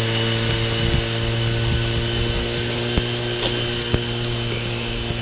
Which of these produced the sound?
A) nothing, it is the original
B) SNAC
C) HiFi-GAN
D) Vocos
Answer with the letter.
A